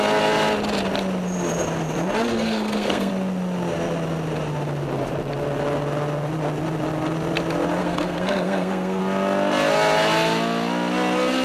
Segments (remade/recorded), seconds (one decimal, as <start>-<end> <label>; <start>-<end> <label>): 0.0-2.3 recorded; 2.3-3.1 remade; 3.1-7.8 recorded; 7.8-9.0 remade; 9.0-11.4 recorded